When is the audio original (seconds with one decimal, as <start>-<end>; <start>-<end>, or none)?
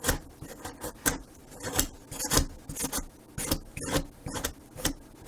0.0-5.3